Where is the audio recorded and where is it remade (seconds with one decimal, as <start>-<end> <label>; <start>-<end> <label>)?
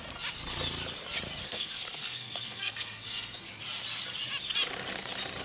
0.0-1.4 recorded; 1.4-3.4 remade; 3.4-5.4 recorded